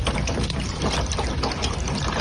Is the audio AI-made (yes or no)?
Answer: no